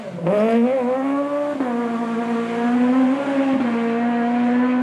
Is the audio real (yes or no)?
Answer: yes